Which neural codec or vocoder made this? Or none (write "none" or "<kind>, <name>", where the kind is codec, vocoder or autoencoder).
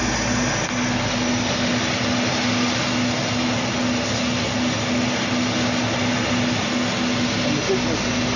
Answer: none